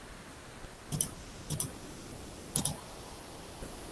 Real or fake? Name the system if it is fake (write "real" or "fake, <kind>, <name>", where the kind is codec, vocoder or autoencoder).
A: real